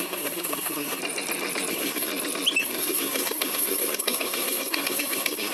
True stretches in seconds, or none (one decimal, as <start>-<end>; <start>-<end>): 1.0-1.7; 2.1-2.6